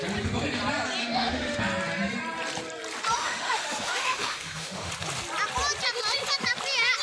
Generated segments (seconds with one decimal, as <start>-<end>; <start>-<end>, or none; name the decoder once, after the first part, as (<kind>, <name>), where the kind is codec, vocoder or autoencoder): 1.0-1.6 (autoencoder, DAC-VAE); 3.2-4.9